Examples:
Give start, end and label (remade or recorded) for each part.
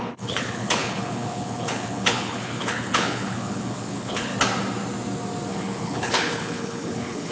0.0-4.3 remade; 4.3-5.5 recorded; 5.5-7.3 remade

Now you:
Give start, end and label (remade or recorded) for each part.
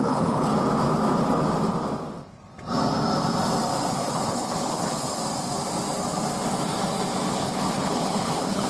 0.0-0.5 remade; 0.5-3.9 recorded; 3.9-5.2 remade; 5.2-7.3 recorded; 7.3-8.7 remade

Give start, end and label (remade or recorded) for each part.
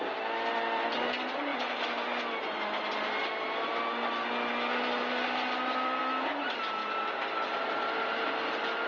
0.0-8.9 recorded